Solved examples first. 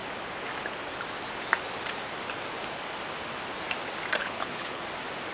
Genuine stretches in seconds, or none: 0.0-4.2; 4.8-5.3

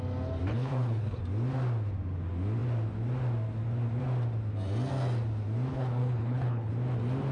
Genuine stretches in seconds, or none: 0.0-0.5; 1.2-5.7; 6.7-7.3

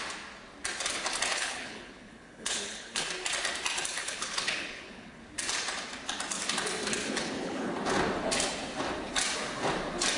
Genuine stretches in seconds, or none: 0.0-1.3; 3.1-4.0; 5.2-7.0; 7.7-10.2

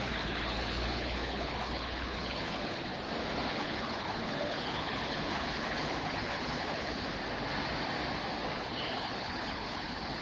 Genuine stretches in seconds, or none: 2.9-3.5; 7.1-8.5

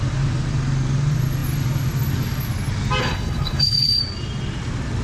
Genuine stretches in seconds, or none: 0.0-3.0; 4.0-5.0

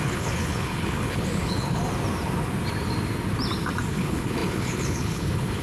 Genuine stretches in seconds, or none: 1.8-3.9